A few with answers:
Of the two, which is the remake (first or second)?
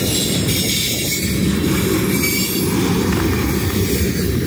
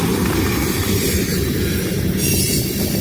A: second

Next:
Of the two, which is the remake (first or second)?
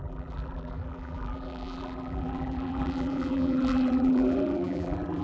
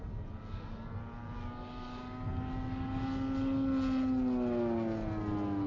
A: first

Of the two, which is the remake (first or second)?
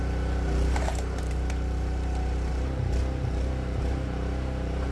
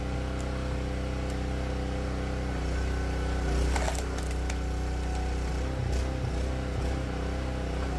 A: first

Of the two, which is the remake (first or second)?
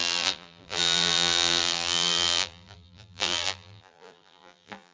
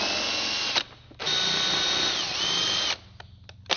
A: first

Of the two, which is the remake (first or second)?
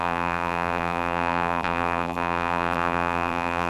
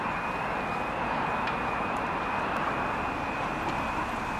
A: first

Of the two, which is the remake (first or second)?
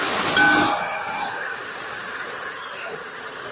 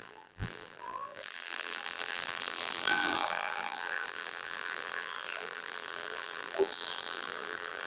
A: second